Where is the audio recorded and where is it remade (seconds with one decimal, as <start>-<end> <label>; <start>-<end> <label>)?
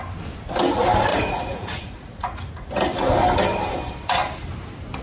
0.0-1.1 recorded; 1.1-2.7 remade; 2.7-5.0 recorded